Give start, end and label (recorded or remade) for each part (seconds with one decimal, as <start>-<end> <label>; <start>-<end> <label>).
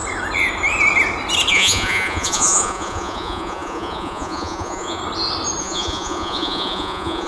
0.0-1.5 recorded; 1.5-5.0 remade; 5.0-5.6 recorded; 5.6-7.3 remade